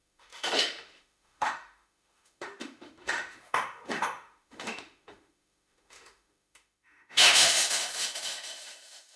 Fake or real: fake